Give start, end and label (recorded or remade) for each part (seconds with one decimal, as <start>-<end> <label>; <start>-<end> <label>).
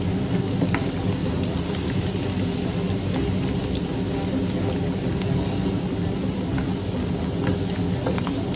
0.0-8.6 recorded